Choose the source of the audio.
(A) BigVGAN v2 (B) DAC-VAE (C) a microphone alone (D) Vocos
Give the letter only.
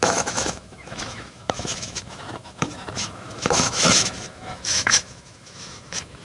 B